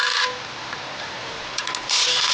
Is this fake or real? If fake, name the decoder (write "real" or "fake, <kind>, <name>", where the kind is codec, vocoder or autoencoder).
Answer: real